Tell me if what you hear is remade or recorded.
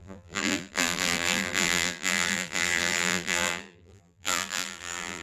remade